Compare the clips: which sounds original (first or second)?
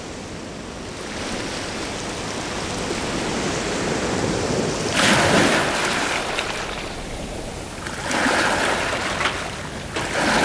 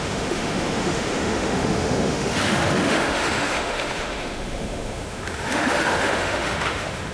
first